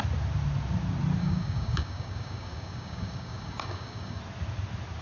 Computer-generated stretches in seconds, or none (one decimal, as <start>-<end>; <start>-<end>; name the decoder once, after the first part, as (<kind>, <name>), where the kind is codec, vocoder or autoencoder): 1.2-4.2 (codec, DAC)